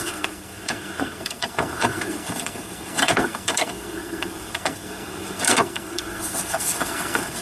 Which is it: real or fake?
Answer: fake